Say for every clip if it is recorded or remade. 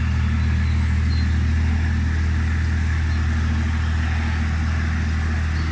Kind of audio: recorded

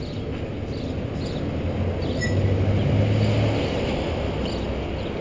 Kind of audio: recorded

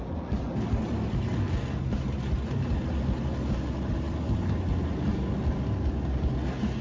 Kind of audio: recorded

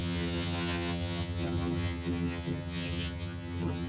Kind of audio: remade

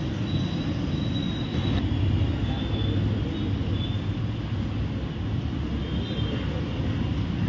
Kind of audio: recorded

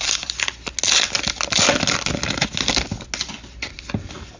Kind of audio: recorded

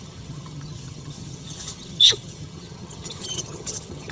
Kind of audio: remade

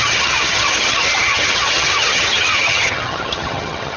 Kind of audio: remade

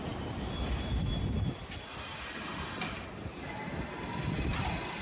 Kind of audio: recorded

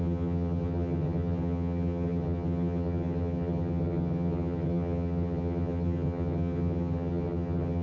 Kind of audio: remade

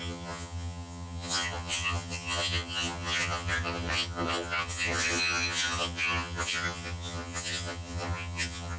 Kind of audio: remade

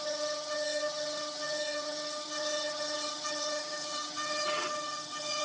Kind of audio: remade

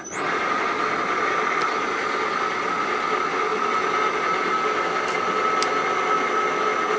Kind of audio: recorded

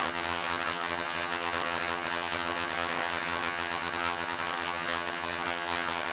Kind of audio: remade